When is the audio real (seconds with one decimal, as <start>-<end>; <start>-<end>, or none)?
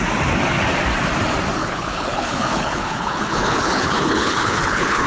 0.0-1.6